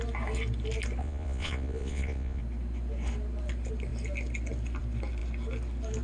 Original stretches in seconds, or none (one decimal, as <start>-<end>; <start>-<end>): 0.0-1.0; 2.4-6.0